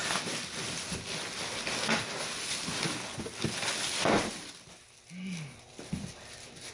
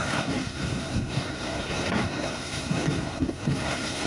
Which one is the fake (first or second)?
second